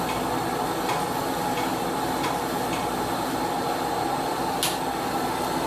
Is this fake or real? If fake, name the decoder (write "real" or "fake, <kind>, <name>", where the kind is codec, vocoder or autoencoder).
real